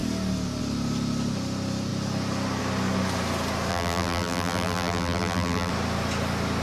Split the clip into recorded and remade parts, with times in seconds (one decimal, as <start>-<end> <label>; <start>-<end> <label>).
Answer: 0.0-3.7 recorded; 3.7-5.7 remade; 5.7-6.6 recorded

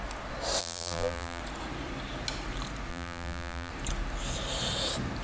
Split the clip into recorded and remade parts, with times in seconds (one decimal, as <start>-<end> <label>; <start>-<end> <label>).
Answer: 0.0-0.6 recorded; 0.6-1.4 remade; 1.4-2.9 recorded; 2.9-3.7 remade; 3.7-5.2 recorded

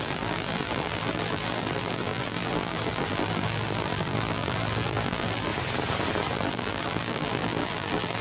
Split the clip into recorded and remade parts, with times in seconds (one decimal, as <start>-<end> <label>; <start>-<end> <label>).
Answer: 0.0-5.5 remade; 5.5-6.3 recorded; 6.3-8.2 remade